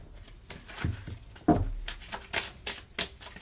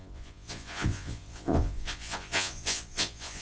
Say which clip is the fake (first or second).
second